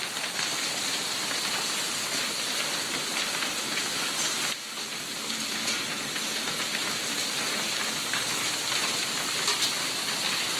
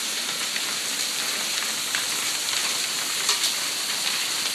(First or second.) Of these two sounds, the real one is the first